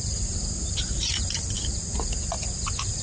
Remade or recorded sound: recorded